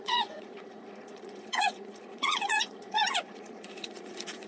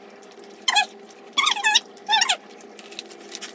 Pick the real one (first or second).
second